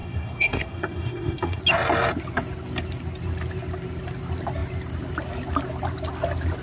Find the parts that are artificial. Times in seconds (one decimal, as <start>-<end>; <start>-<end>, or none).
0.0-1.6